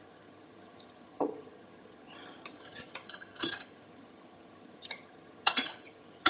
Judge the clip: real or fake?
fake